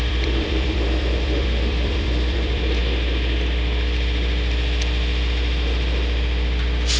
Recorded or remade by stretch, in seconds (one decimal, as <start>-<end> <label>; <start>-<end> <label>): 0.0-2.8 remade; 2.8-7.0 recorded